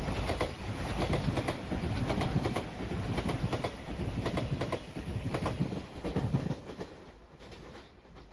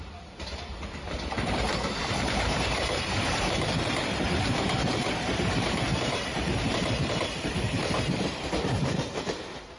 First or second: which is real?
first